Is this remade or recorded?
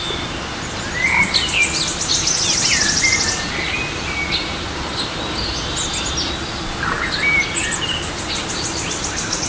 recorded